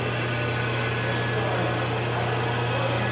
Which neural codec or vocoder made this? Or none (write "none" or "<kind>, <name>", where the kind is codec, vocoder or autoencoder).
none